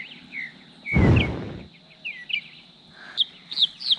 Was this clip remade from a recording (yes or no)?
no